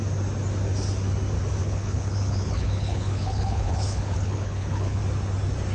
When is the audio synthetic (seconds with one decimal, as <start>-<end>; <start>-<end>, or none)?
1.6-5.0